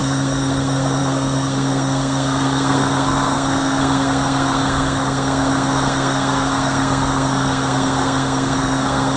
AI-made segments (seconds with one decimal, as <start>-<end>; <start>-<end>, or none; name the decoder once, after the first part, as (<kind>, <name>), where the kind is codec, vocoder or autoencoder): 0.0-9.2 (codec, SNAC)